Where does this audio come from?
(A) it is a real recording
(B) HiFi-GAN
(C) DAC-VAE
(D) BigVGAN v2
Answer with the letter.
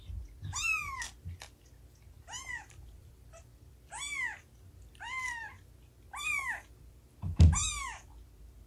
A